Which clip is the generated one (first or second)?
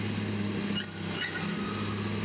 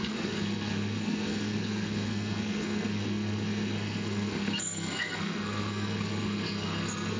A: second